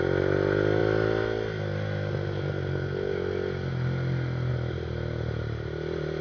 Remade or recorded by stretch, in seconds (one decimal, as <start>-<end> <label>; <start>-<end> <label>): 0.0-6.2 recorded